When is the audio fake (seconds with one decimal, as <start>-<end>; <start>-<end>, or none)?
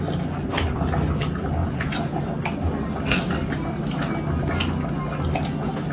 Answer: 1.6-2.2